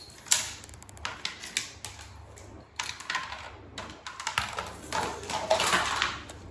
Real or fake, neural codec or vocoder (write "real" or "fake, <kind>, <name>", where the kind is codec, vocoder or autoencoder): real